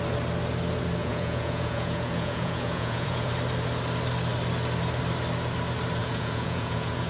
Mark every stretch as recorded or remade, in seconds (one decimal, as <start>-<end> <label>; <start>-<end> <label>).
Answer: 0.0-1.0 recorded; 1.0-3.3 remade; 3.3-6.0 recorded; 6.0-7.1 remade